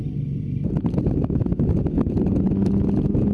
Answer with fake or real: real